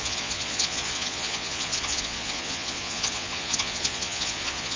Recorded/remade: remade